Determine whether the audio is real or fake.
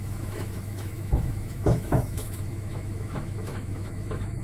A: fake